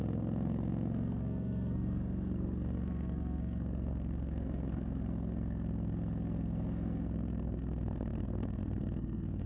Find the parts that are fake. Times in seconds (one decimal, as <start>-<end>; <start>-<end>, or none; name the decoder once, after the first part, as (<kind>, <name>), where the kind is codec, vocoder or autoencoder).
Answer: 0.0-9.5 (codec, SNAC)